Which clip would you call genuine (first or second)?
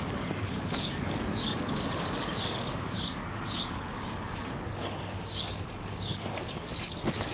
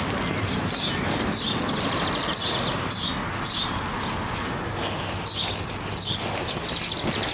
second